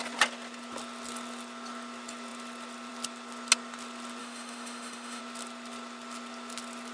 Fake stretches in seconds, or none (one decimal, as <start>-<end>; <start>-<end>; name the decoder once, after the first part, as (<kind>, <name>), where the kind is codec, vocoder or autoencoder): 4.2-5.2 (autoencoder, DAC-VAE)